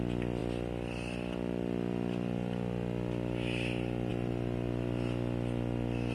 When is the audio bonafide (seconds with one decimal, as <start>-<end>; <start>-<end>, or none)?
0.0-6.1